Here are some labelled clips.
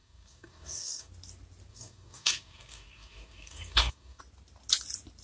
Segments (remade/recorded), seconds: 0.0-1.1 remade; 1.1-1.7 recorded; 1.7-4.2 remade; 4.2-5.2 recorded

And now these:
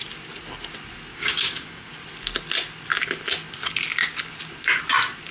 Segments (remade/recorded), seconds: 0.0-1.1 recorded; 1.1-1.9 remade; 1.9-5.3 recorded

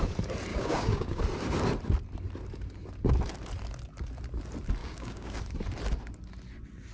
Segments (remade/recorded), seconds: 0.0-0.5 recorded; 0.5-1.2 remade; 1.2-4.8 recorded; 4.8-5.4 remade; 5.4-6.9 recorded

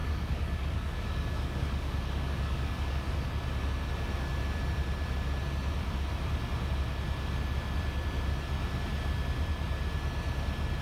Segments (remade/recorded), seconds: 0.0-3.3 remade; 3.3-10.8 recorded